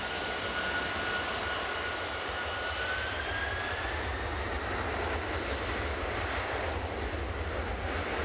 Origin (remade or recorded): recorded